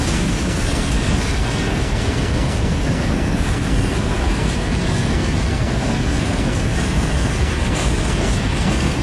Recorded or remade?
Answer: remade